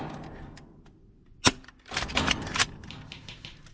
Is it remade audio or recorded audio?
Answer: recorded